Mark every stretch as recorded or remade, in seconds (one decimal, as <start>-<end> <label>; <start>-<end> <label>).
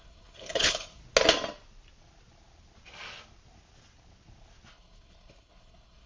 0.0-1.0 remade; 1.0-4.7 recorded; 4.7-6.1 remade